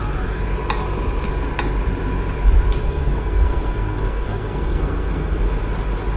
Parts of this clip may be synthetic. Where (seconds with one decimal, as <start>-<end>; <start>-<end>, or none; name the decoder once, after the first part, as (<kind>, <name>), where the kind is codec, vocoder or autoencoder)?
2.8-5.5 (codec, SNAC)